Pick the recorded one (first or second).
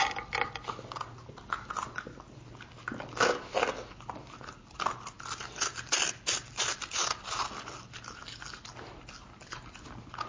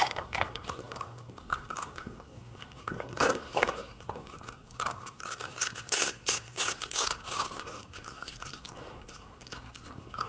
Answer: first